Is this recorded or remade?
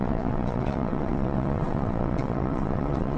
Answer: remade